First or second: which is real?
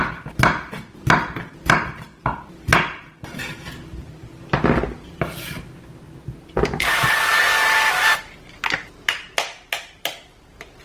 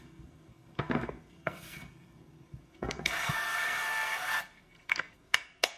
first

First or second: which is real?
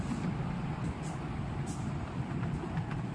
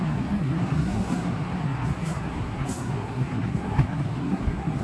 first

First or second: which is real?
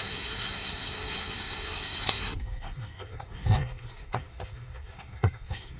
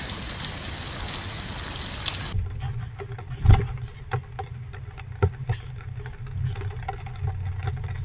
second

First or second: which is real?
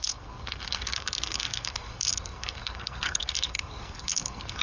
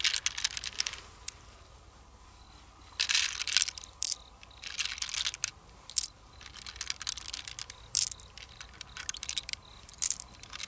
second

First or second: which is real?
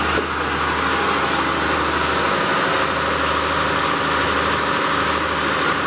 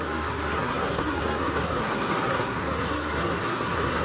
first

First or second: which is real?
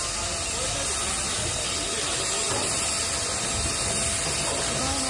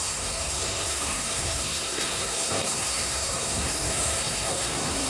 first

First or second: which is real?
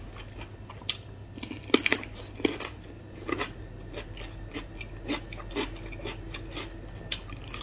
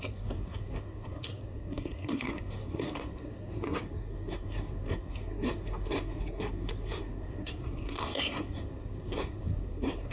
first